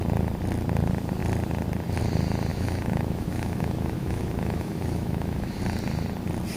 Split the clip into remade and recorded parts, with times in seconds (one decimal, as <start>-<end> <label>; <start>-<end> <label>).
0.0-2.5 recorded; 2.5-5.6 remade; 5.6-6.6 recorded